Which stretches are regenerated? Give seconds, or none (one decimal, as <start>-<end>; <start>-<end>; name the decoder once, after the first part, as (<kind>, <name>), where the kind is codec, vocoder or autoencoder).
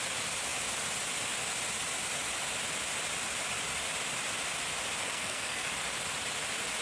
5.0-5.7 (codec, SNAC)